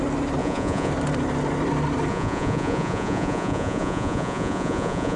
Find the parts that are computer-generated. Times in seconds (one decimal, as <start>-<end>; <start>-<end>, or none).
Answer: 0.4-0.9; 2.1-5.2

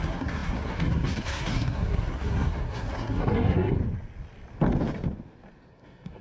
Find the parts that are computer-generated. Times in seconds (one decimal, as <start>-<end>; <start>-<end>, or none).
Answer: 0.0-3.8; 5.7-6.2

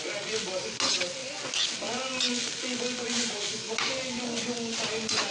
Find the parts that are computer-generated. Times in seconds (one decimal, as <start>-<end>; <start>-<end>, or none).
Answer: none